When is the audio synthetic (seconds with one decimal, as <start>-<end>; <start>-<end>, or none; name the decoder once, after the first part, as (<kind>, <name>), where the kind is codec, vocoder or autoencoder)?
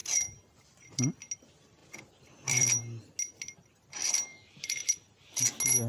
0.0-1.1 (vocoder, BigVGAN v2); 1.8-3.2; 4.3-5.4